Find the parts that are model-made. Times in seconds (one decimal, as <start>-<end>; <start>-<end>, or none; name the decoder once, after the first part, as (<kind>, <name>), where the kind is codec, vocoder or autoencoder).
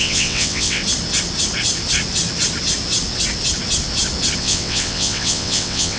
0.0-0.8 (vocoder, WaveNeXt); 4.4-6.0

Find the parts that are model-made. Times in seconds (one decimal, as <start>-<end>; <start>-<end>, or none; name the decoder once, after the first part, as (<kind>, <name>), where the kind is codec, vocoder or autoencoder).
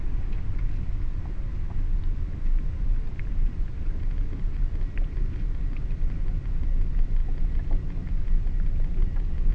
none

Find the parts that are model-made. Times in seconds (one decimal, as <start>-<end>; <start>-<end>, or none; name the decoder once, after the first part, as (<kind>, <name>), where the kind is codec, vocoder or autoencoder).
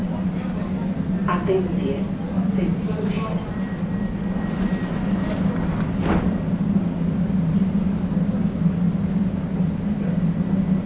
none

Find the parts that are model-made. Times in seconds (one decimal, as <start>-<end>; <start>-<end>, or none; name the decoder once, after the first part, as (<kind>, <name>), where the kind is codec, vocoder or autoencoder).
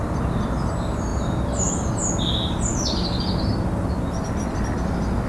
none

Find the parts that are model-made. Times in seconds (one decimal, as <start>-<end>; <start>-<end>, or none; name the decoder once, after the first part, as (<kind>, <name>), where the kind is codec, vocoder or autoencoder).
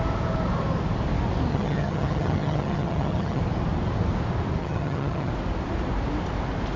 1.5-3.4 (vocoder, HiFi-GAN); 4.6-5.3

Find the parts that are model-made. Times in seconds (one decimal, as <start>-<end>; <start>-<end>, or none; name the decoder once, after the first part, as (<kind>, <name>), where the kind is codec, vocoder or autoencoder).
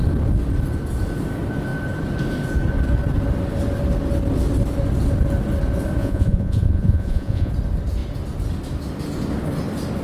6.0-7.5 (vocoder, Vocos)